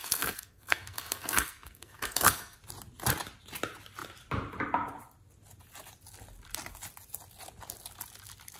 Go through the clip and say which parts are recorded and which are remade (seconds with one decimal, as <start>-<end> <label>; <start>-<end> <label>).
0.0-2.6 remade; 2.6-8.6 recorded